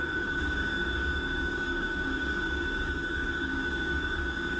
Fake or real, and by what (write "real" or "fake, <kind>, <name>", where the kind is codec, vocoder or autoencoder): fake, codec, DAC